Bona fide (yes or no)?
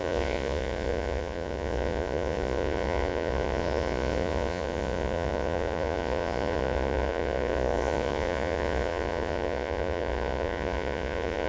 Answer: no